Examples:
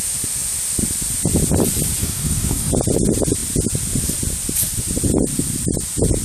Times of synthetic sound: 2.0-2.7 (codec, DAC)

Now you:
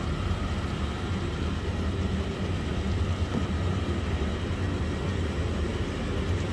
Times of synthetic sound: none

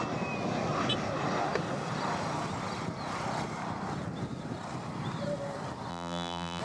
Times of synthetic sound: 5.9-6.6 (vocoder, BigVGAN v2)